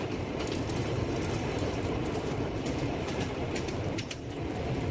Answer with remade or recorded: remade